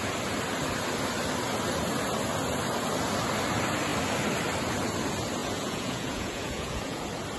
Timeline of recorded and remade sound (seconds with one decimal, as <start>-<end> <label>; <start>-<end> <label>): 0.0-5.4 recorded; 5.4-7.0 remade; 7.0-7.4 recorded